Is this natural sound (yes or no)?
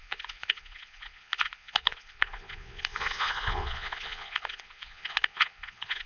no